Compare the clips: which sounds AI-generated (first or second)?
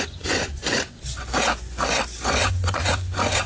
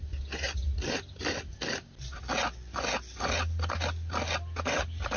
first